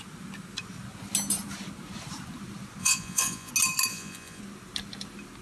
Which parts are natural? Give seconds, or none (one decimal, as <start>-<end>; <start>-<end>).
0.0-2.8; 3.5-3.9; 4.4-5.4